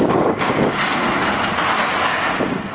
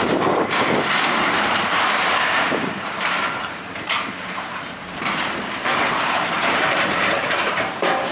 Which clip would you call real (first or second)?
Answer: first